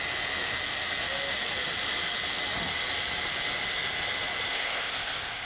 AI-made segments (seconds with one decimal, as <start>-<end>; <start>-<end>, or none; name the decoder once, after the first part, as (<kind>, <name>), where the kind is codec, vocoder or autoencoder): 4.5-5.5 (codec, ZipCodec)